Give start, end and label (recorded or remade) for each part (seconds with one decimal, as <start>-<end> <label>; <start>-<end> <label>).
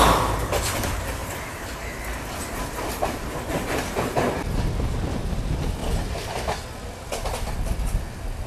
0.0-8.5 recorded